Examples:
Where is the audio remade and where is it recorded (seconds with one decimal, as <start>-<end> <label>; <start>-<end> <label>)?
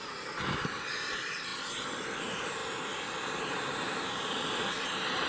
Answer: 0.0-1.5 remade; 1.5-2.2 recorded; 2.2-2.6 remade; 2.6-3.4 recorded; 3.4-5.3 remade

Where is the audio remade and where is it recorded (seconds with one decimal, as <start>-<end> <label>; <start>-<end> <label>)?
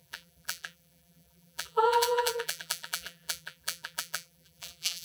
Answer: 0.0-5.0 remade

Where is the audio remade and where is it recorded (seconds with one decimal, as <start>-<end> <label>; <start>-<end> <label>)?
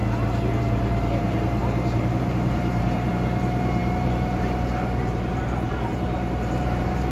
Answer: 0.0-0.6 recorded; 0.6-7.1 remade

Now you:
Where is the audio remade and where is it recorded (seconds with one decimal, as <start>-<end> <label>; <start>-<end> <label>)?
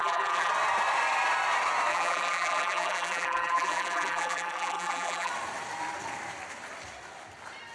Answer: 0.0-0.5 remade; 0.5-1.9 recorded; 1.9-5.3 remade; 5.3-7.7 recorded